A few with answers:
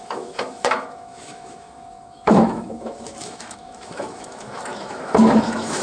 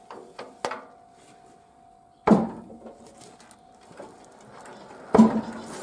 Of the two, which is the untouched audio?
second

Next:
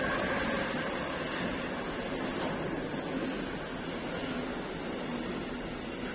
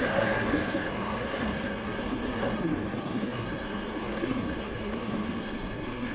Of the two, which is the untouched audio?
first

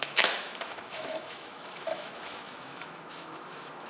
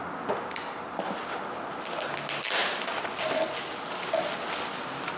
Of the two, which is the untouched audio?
second